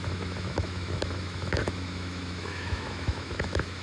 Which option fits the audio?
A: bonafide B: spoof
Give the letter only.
B